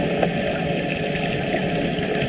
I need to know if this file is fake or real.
real